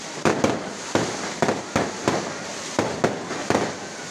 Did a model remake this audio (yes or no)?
no